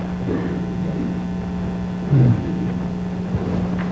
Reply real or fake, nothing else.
real